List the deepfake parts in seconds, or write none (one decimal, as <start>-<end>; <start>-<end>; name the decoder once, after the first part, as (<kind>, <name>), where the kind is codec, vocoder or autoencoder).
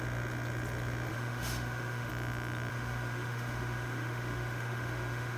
1.1-2.1 (autoencoder, DAC-VAE); 2.7-5.4